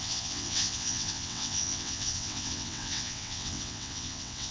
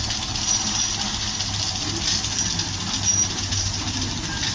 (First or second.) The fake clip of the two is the first